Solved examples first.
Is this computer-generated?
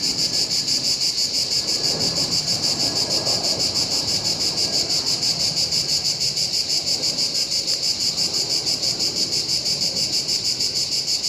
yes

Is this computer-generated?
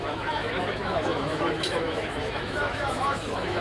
yes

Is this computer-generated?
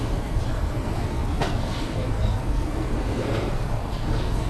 yes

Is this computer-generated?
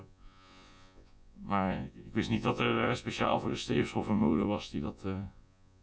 yes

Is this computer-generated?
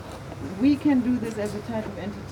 no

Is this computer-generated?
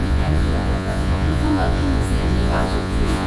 yes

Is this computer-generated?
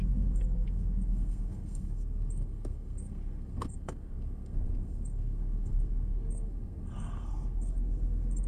yes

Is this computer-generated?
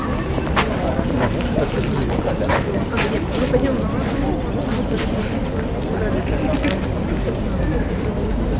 no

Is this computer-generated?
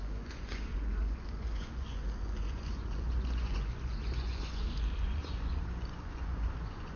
yes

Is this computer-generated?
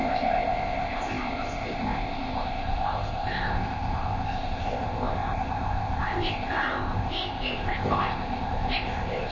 yes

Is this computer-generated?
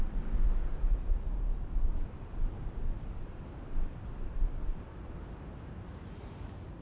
no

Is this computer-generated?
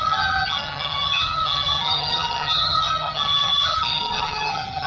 yes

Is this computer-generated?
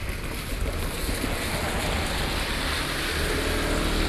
no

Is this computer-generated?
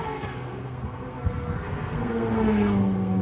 yes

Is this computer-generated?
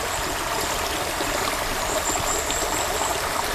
no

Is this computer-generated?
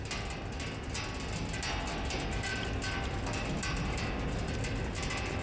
no